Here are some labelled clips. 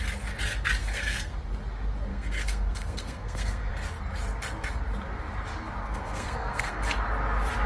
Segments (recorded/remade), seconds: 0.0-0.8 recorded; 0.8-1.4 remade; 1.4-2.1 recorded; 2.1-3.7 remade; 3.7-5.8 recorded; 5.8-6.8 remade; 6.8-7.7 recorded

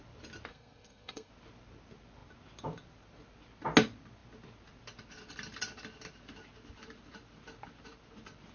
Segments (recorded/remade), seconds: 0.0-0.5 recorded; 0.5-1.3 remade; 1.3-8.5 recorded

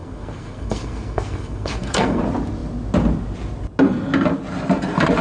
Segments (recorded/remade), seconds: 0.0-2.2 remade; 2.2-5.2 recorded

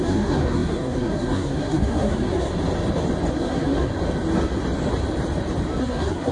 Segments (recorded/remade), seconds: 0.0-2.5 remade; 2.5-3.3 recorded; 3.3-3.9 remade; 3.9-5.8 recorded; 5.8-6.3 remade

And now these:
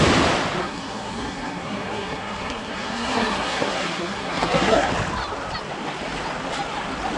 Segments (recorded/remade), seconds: 0.0-0.6 recorded; 0.6-4.9 remade; 4.9-7.2 recorded

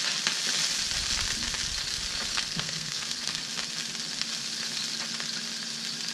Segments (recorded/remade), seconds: 0.0-2.3 recorded; 2.3-3.4 remade; 3.4-6.1 recorded

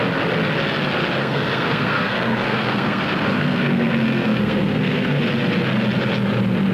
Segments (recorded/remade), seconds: 0.0-1.2 recorded; 1.2-5.2 remade; 5.2-6.7 recorded